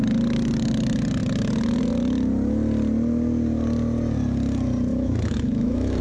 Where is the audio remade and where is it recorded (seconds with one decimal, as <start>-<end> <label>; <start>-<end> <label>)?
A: 0.0-4.9 recorded; 4.9-6.0 remade